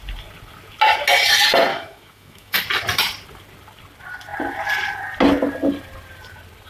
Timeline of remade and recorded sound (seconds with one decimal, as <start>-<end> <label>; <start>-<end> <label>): 0.0-1.7 recorded; 1.7-2.6 remade; 2.6-6.7 recorded